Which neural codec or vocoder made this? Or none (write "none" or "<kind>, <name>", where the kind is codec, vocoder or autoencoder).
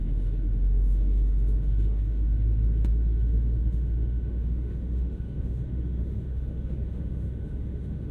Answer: autoencoder, DAC-VAE